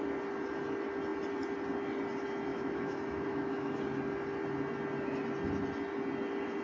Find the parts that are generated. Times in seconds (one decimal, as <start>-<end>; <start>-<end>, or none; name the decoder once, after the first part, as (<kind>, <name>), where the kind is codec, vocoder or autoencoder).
2.5-3.8 (autoencoder, DAC-VAE)